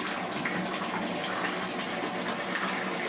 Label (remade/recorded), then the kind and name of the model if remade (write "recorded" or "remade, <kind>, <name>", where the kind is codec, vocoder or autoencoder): recorded